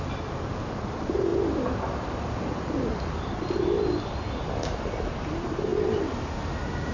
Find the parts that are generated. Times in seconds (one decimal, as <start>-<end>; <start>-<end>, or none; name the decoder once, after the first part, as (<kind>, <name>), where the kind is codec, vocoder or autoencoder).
none